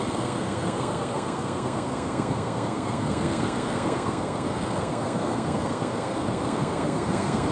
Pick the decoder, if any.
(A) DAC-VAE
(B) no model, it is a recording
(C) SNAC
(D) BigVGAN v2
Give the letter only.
C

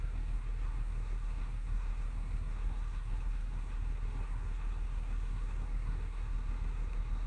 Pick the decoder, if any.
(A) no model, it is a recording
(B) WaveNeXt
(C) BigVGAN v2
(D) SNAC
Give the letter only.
D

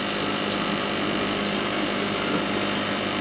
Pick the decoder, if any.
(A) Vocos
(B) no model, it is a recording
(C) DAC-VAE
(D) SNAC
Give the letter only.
B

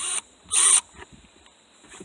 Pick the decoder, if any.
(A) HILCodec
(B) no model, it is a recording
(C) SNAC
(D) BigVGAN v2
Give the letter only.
B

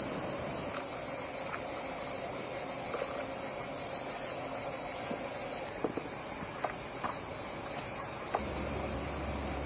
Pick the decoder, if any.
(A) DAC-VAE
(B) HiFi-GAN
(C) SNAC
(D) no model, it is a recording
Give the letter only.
D